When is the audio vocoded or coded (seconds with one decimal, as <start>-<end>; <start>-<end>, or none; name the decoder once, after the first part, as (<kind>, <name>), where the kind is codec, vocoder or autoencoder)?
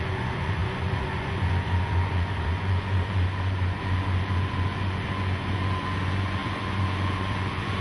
0.0-7.8 (vocoder, Vocos)